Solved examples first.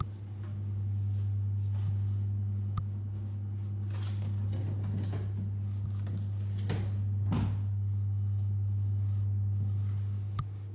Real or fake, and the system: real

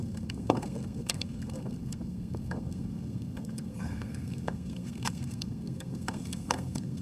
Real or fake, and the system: fake, codec, SNAC